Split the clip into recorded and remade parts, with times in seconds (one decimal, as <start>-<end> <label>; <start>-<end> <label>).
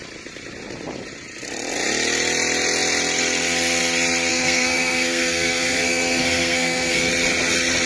0.0-4.3 recorded; 4.3-7.1 remade; 7.1-7.9 recorded